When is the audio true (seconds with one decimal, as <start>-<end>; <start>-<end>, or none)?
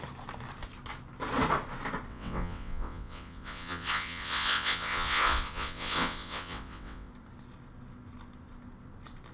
0.0-2.1; 7.1-9.3